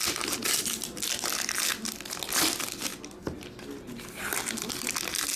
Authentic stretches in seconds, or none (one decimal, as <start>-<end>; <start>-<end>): 0.0-5.4